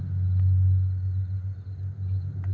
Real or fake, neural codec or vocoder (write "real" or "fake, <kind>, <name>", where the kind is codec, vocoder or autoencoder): real